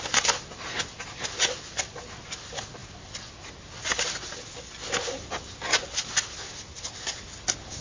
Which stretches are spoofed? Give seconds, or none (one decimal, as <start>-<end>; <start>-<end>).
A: none